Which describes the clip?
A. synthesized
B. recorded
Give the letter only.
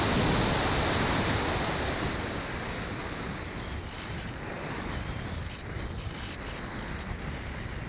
B